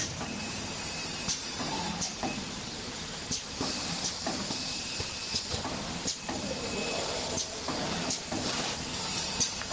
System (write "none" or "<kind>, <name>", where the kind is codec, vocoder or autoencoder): vocoder, BigVGAN v2